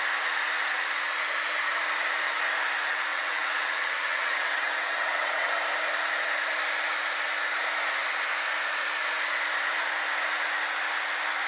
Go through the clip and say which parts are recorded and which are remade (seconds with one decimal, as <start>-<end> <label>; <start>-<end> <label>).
0.0-3.1 recorded; 3.1-5.5 remade; 5.5-11.5 recorded